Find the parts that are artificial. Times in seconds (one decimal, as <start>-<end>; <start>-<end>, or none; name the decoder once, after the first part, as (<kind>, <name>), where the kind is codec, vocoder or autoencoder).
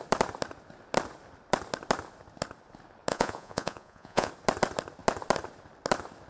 3.1-4.3 (vocoder, Vocos)